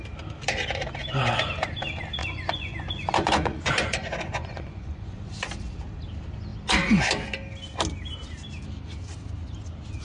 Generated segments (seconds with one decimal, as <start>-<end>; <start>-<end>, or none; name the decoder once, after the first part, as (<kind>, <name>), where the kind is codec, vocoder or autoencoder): 2.2-5.5 (vocoder, Vocos)